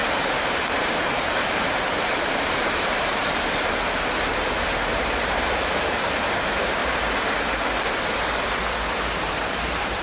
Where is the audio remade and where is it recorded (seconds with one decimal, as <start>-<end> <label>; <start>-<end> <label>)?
0.0-3.2 remade; 3.2-4.5 recorded; 4.5-6.8 remade; 6.8-9.3 recorded; 9.3-10.0 remade